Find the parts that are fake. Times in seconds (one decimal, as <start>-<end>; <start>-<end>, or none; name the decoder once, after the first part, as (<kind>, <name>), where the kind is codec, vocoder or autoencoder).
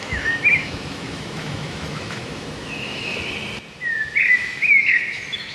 0.0-3.1 (autoencoder, DAC-VAE); 4.2-5.5